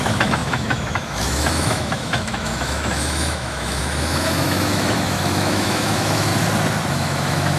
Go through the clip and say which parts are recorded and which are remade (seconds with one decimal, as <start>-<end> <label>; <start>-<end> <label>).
0.0-6.3 remade; 6.3-6.9 recorded; 6.9-7.6 remade